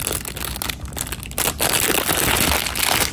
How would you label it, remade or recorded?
recorded